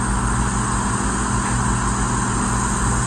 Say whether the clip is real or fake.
real